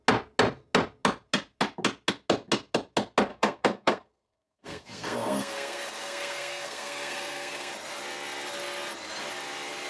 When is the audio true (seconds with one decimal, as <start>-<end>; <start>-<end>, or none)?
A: 0.0-3.3; 7.7-9.9